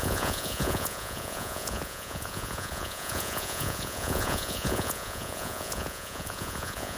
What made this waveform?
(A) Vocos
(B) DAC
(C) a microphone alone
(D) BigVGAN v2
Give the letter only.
A